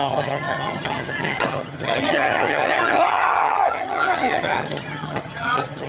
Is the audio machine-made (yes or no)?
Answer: yes